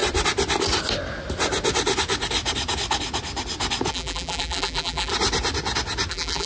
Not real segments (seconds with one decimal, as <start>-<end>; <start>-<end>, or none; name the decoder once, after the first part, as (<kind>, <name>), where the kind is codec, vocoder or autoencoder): 3.9-5.1 (vocoder, BigVGAN v2); 6.1-6.5